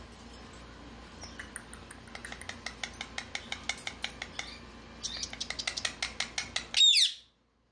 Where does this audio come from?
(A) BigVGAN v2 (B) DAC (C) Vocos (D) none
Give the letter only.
D